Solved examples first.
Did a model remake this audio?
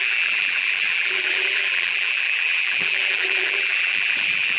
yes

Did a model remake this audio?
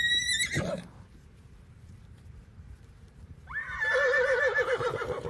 yes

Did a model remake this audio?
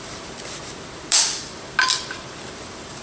yes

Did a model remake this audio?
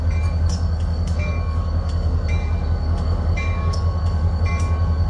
yes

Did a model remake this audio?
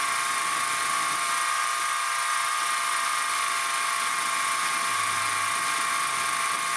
no